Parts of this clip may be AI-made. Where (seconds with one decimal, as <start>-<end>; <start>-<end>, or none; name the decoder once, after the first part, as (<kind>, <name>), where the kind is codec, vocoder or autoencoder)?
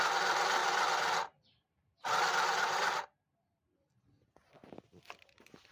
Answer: none